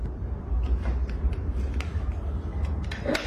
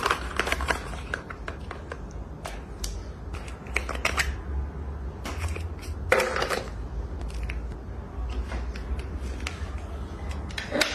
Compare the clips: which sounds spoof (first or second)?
first